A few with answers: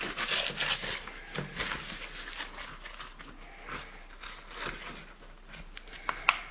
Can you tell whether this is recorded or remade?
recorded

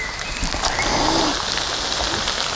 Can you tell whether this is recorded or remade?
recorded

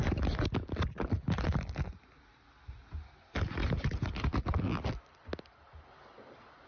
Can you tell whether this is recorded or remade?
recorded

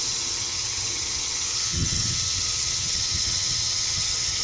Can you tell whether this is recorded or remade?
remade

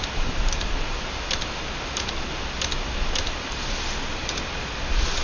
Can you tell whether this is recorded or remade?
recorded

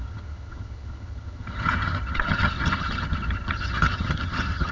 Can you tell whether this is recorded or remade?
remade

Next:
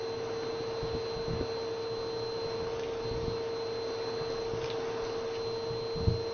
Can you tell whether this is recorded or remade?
recorded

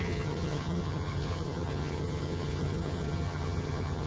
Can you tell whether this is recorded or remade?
remade